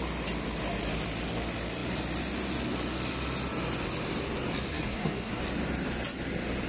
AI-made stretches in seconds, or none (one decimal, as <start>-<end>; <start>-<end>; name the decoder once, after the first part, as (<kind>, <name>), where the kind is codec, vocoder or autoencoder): 4.7-5.4 (codec, SNAC)